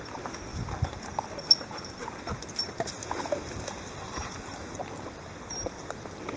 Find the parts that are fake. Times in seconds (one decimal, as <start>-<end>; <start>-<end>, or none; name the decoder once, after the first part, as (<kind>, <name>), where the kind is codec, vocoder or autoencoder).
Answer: none